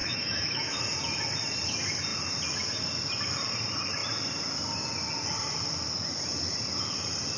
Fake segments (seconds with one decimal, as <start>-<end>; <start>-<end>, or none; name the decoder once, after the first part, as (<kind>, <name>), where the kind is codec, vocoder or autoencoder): 0.0-0.8 (autoencoder, DAC-VAE)

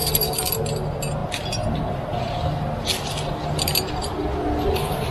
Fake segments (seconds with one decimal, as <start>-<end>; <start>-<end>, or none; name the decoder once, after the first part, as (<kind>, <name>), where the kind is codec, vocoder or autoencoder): none

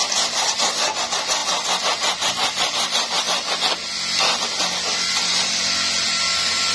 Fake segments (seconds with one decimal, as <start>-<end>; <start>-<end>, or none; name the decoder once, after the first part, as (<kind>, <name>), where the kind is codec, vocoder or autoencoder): none

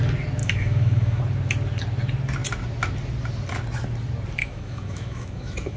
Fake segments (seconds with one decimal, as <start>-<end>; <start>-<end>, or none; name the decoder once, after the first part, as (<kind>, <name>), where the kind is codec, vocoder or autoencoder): 0.4-1.2 (autoencoder, DAC-VAE); 4.4-5.8

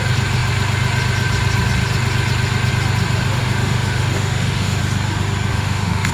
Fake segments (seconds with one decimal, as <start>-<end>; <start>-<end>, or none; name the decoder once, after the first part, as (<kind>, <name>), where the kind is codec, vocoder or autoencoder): 3.4-4.8 (autoencoder, DAC-VAE); 5.5-6.1